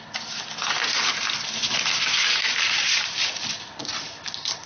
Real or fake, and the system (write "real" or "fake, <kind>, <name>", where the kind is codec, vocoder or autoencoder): real